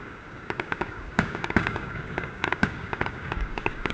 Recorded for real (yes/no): no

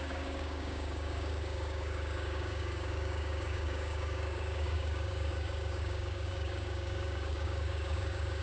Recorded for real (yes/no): no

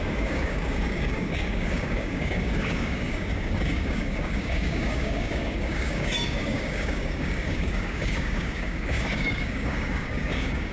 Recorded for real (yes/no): no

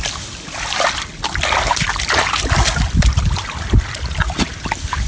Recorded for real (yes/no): yes